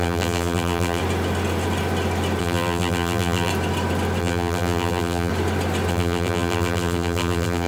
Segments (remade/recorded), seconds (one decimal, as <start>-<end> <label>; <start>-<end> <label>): 0.0-1.0 remade; 1.0-2.4 recorded; 2.4-3.5 remade; 3.5-4.2 recorded; 4.2-5.3 remade; 5.3-5.9 recorded; 5.9-7.7 remade